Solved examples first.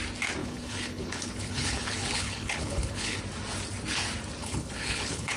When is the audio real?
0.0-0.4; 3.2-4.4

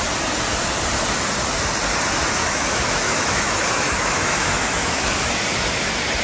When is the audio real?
0.0-2.4; 5.3-6.2